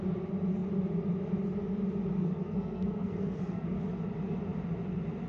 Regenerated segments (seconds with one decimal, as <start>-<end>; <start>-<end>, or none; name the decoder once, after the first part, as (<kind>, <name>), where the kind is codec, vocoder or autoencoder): 2.2-3.8 (codec, SNAC)